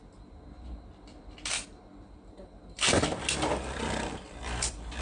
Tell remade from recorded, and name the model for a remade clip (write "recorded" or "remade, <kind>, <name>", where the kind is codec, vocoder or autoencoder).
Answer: recorded